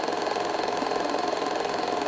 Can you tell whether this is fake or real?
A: fake